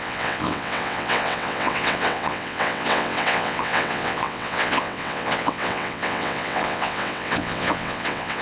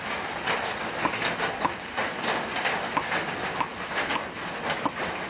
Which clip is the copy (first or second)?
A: first